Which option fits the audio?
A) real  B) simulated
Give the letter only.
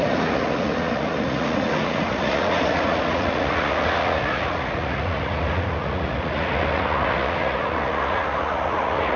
B